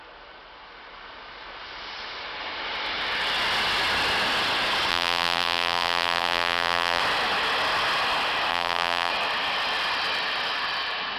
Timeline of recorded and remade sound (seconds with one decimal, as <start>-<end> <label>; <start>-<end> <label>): 0.0-4.9 recorded; 4.9-7.0 remade; 7.0-8.5 recorded; 8.5-9.1 remade; 9.1-11.2 recorded